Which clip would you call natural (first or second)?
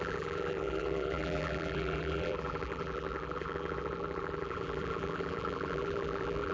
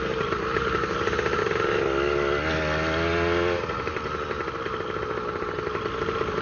second